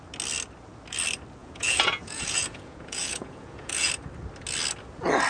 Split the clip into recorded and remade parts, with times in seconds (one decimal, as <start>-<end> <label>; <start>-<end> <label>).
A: 0.0-1.4 recorded; 1.4-3.9 remade; 3.9-5.3 recorded